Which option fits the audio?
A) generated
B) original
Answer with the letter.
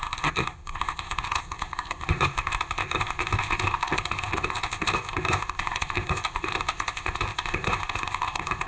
A